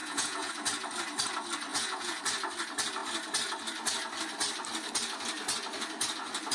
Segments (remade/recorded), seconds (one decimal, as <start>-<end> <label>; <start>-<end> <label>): 0.0-0.5 remade; 0.5-1.7 recorded; 1.7-2.2 remade; 2.2-6.5 recorded